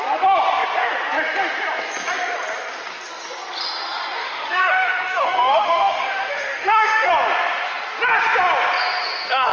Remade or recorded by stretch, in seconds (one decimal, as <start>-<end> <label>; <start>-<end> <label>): 0.0-4.2 recorded; 4.2-7.1 remade; 7.1-9.5 recorded